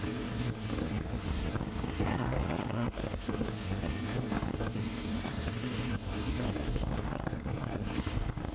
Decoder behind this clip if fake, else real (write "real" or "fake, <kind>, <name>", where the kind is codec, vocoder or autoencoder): fake, codec, SNAC